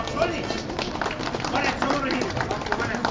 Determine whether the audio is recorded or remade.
recorded